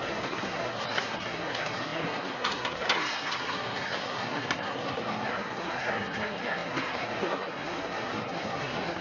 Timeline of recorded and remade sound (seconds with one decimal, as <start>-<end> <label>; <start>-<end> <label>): 0.0-9.0 remade